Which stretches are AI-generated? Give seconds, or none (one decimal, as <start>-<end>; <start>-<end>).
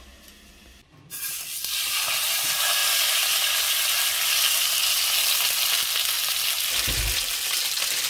none